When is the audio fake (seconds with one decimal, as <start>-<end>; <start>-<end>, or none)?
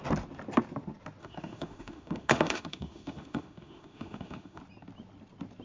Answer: 1.2-4.6